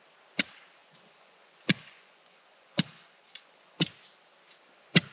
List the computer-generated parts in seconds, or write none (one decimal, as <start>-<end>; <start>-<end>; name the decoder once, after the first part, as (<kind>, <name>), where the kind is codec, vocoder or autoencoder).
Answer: 0.8-3.9 (vocoder, Vocos)

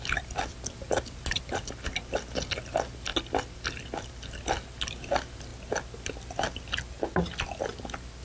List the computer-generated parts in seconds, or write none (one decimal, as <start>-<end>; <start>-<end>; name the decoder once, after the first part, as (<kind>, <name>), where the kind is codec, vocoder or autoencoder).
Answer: none